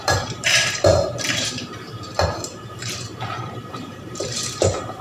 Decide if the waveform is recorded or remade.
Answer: remade